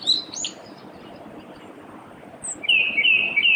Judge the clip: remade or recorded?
recorded